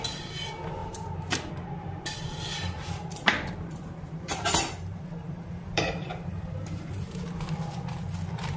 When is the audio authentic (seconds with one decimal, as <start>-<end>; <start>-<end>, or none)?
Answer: 0.0-0.8; 1.5-2.5; 7.2-8.6